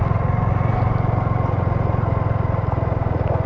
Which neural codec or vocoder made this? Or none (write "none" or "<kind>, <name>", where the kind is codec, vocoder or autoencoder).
none